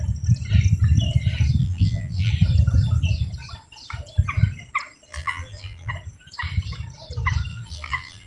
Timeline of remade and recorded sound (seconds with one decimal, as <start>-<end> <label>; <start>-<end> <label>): 0.0-1.6 recorded; 1.6-2.3 remade; 2.3-5.1 recorded; 5.1-5.9 remade; 5.9-7.5 recorded; 7.5-8.3 remade